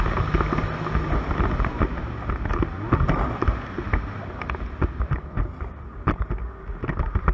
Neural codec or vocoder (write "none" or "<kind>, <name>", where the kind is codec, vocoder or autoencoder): none